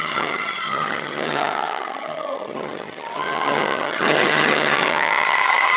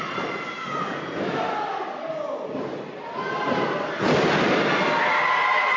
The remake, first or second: first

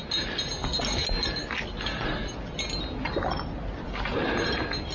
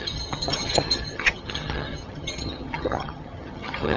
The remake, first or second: second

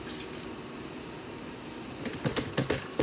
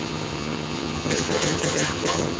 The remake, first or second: second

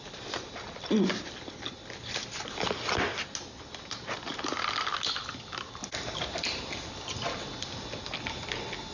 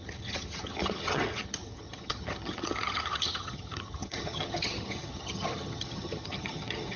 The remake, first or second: second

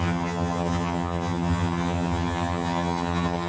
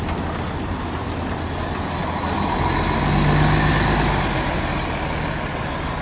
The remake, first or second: first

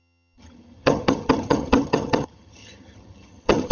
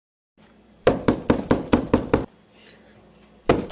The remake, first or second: first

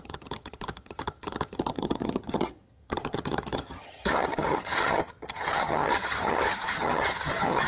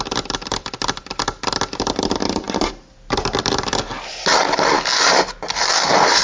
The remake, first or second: first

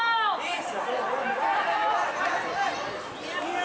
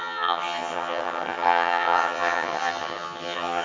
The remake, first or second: second